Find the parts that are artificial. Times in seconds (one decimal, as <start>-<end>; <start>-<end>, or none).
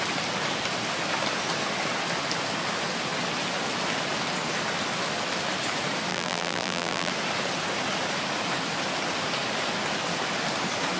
6.1-7.1